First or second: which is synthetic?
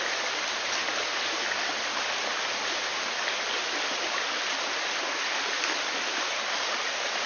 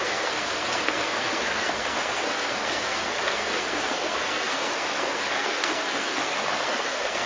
second